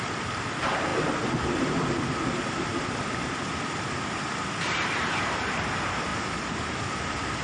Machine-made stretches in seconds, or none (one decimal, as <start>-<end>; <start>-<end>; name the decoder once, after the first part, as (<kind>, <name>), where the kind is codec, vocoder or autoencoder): 0.0-0.9 (vocoder, BigVGAN v2); 4.5-6.1; 6.6-7.4